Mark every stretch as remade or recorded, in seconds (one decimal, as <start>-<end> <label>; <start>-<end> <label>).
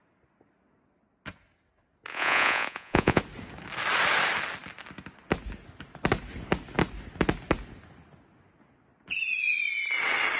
0.0-2.1 recorded; 2.1-3.2 remade; 3.2-10.4 recorded